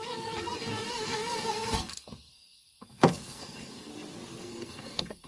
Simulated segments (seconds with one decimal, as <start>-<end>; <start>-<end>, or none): 0.0-3.9; 4.4-5.3